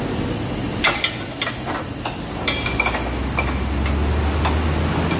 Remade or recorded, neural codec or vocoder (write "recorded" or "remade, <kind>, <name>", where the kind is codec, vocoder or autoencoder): recorded